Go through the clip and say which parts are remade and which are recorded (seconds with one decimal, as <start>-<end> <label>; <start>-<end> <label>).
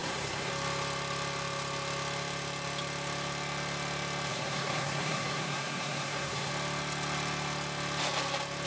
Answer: 0.0-0.5 remade; 0.5-4.3 recorded; 4.3-6.5 remade; 6.5-8.7 recorded